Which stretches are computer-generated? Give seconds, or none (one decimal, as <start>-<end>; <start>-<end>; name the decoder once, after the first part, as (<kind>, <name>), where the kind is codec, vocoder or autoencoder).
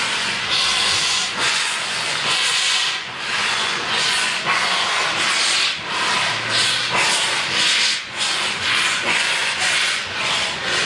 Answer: 0.0-5.0 (vocoder, Vocos); 7.9-10.9